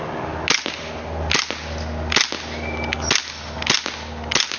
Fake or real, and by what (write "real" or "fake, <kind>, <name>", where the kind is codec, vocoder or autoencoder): real